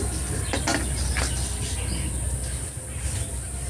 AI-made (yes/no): no